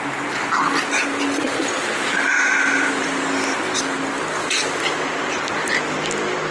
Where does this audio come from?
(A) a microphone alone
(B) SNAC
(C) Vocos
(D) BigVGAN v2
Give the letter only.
A